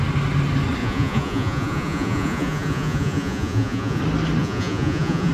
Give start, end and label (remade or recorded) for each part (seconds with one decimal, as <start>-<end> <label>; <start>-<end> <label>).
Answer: 0.0-0.8 recorded; 0.8-4.0 remade; 4.0-4.4 recorded; 4.4-5.3 remade